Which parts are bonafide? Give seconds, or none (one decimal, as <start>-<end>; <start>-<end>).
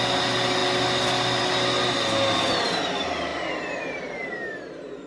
0.0-5.1